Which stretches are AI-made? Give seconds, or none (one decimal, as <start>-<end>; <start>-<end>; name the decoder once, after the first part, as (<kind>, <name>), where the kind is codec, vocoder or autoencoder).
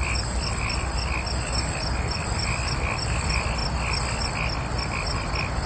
none